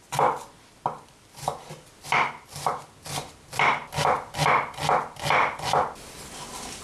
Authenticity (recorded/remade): recorded